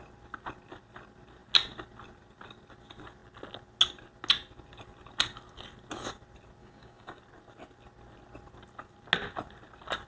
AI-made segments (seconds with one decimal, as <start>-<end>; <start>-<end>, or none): 6.6-7.2

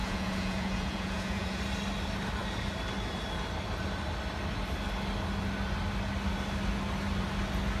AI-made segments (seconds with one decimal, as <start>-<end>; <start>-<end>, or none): 0.0-1.6